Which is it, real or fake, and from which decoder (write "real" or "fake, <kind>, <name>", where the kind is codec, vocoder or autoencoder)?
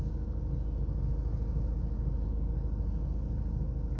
real